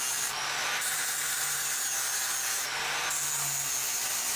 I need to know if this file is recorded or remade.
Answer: recorded